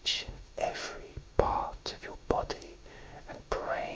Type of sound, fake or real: fake